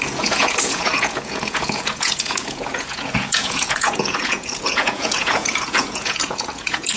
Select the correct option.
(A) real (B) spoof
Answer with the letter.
B